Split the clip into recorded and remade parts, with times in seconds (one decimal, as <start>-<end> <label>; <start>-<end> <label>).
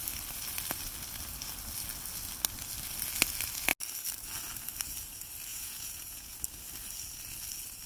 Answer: 0.0-5.5 recorded; 5.5-6.4 remade; 6.4-7.9 recorded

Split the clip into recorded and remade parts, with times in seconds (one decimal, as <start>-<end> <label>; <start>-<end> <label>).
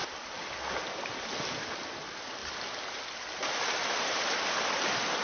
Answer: 0.0-1.1 remade; 1.1-2.4 recorded; 2.4-4.3 remade; 4.3-5.2 recorded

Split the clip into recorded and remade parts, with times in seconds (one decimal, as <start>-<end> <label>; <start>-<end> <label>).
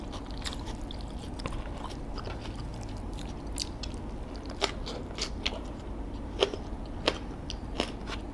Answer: 0.0-2.7 recorded; 2.7-3.4 remade; 3.4-8.3 recorded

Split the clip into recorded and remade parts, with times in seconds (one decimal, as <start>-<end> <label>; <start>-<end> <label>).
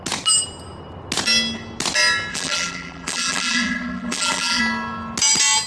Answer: 0.0-2.3 recorded; 2.3-4.6 remade; 4.6-5.7 recorded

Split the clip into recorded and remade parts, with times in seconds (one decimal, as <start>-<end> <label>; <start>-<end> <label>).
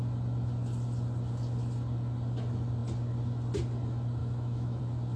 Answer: 0.0-4.2 recorded; 4.2-4.8 remade; 4.8-5.2 recorded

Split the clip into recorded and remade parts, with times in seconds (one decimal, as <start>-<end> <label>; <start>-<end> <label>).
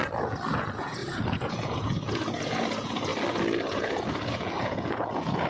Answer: 0.0-0.5 recorded; 0.5-3.1 remade; 3.1-3.7 recorded; 3.7-5.5 remade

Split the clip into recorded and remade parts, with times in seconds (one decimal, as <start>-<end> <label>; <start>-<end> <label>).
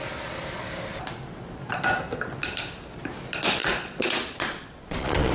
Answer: 0.0-3.6 recorded; 3.6-5.3 remade